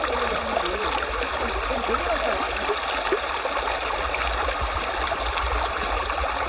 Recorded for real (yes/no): yes